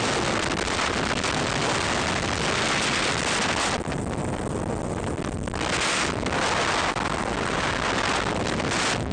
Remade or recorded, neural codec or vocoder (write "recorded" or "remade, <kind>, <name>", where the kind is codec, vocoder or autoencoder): recorded